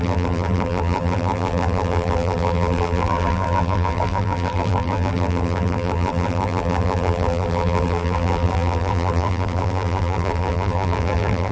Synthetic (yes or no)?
yes